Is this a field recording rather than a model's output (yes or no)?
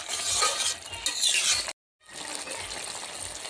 yes